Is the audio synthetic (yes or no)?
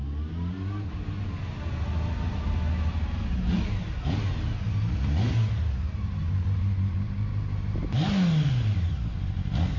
no